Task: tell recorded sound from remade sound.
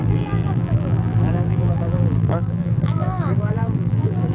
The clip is remade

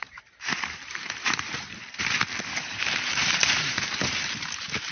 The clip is remade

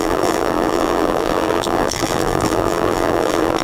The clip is remade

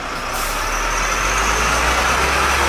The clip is recorded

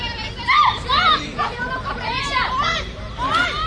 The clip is recorded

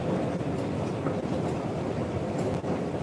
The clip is recorded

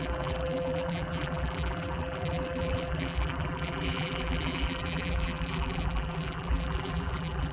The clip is remade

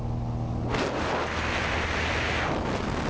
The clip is recorded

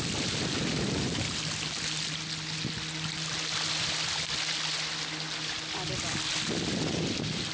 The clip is recorded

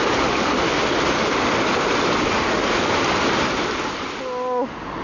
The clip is recorded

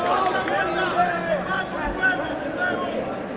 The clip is recorded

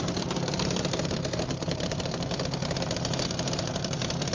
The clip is remade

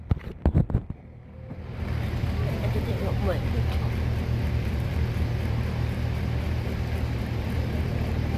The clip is remade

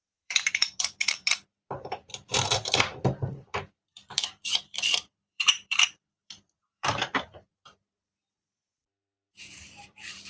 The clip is remade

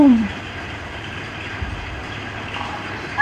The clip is remade